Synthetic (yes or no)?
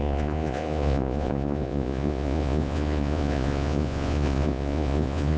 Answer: yes